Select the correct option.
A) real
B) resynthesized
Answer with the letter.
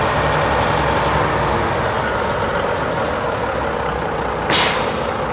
A